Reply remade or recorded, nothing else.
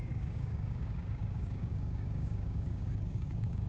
remade